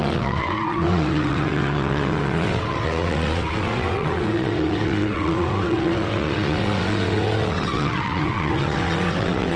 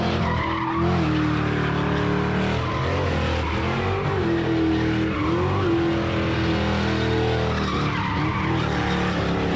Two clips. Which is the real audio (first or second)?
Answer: second